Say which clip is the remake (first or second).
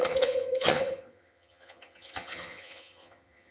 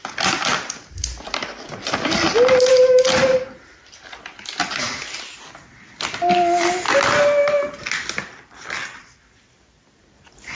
first